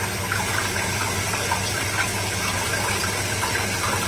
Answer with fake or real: real